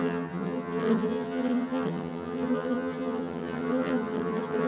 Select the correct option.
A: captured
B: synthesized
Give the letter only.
B